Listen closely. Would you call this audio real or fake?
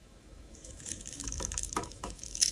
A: fake